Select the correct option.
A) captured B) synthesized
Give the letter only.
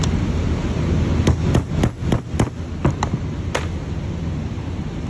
A